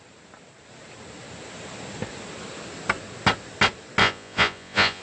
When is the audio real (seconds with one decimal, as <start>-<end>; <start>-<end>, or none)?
0.0-4.0